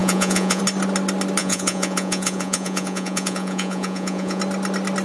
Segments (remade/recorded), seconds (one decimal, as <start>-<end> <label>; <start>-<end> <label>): 0.0-0.6 remade; 0.6-1.4 recorded; 1.4-4.4 remade; 4.4-5.0 recorded